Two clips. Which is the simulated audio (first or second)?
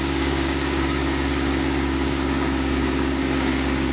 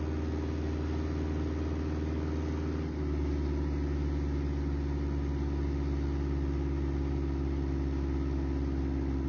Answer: first